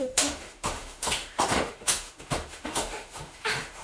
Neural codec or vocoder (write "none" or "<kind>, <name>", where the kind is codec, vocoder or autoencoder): autoencoder, DAC-VAE